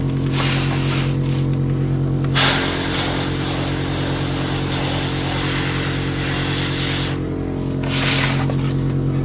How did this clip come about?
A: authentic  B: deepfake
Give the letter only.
A